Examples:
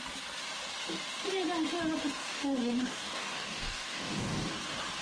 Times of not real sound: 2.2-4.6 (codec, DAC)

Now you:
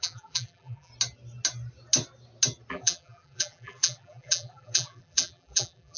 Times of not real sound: 0.0-0.9 (vocoder, BigVGAN v2); 2.7-6.0

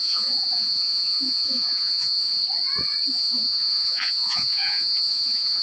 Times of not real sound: 0.0-2.4 (vocoder, Vocos); 3.1-5.6

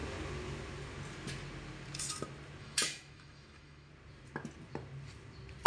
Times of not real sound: 2.6-3.9 (autoencoder, DAC-VAE)

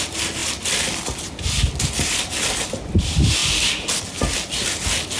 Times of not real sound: none